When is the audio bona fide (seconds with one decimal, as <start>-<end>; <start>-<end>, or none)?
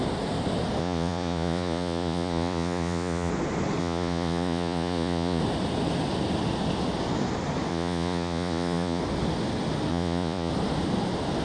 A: 0.0-0.8; 3.3-3.8; 5.4-7.7; 9.0-9.9; 10.5-11.4